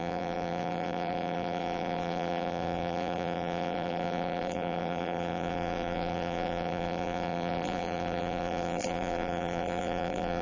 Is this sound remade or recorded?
remade